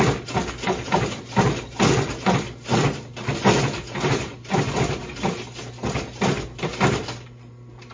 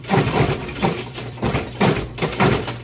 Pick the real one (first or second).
first